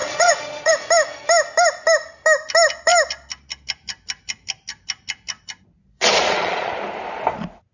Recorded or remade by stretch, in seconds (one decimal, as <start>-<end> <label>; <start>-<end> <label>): 0.0-0.7 remade; 0.7-5.8 recorded; 5.8-6.7 remade; 6.7-7.7 recorded